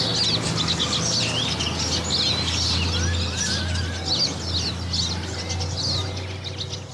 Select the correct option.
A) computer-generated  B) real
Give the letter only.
B